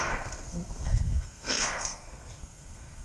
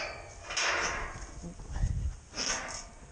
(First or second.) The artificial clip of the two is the first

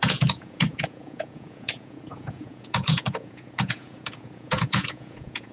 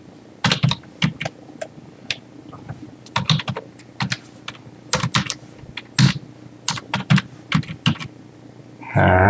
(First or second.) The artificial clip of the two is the first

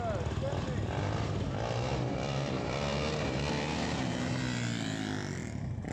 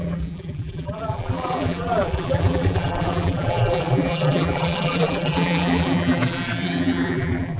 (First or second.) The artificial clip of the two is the second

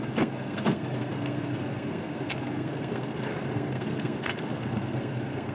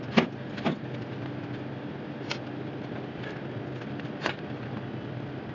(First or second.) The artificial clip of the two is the first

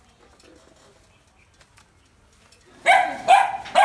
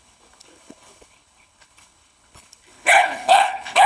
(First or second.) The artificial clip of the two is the second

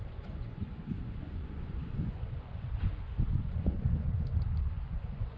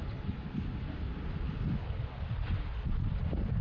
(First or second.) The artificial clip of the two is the first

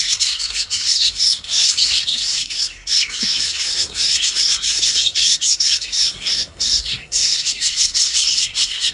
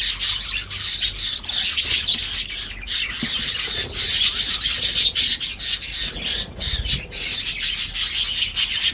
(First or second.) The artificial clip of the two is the first